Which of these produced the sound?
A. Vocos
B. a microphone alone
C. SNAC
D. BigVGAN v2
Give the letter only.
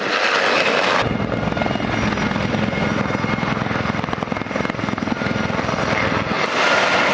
B